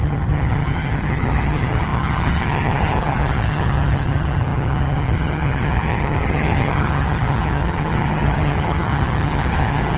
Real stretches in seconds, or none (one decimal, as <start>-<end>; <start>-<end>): none